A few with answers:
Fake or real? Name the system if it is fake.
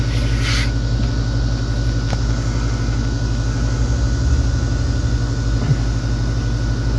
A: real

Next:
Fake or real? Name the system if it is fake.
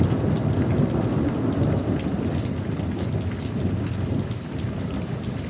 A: real